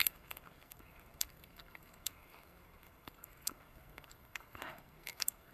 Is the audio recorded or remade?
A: remade